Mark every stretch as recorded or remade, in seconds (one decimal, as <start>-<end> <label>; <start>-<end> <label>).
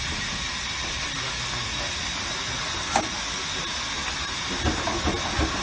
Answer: 0.0-5.6 recorded